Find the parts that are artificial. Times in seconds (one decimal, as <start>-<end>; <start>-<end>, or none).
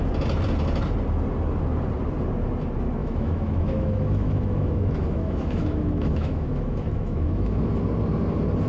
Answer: 3.0-7.7